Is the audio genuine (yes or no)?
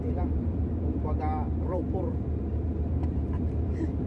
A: no